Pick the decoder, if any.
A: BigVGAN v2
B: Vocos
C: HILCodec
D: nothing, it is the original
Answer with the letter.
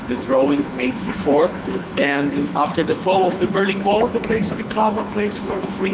C